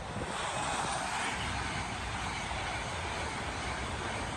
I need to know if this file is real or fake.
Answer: real